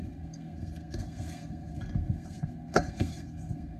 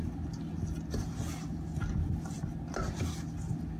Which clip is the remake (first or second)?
first